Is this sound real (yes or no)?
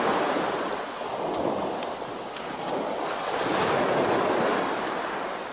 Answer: yes